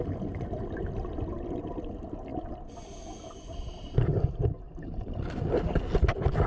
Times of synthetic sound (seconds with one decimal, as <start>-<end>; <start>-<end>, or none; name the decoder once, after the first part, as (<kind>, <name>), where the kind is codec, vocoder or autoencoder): none